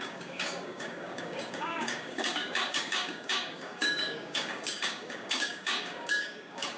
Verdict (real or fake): fake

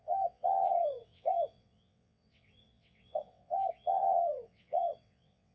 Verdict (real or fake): fake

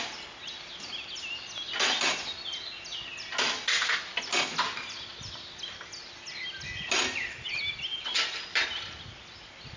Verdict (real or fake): real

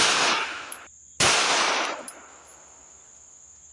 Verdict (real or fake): real